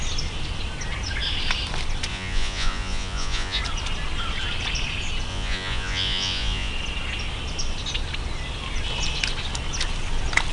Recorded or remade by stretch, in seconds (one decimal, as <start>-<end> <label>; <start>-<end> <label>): 0.0-2.1 recorded; 2.1-3.6 remade; 3.6-5.3 recorded; 5.3-6.7 remade; 6.7-10.5 recorded